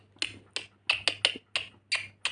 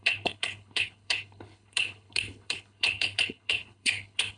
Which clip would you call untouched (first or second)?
first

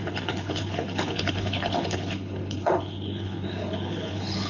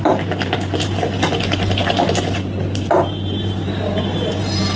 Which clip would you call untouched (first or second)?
second